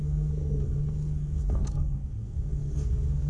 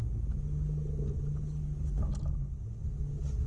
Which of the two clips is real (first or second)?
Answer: second